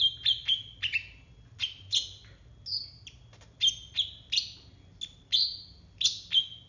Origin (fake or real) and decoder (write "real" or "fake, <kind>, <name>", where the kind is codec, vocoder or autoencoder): real